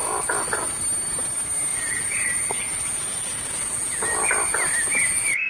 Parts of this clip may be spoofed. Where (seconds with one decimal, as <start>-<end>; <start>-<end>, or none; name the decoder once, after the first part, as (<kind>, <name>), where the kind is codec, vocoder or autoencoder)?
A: 0.0-0.8 (vocoder, Vocos); 1.7-4.3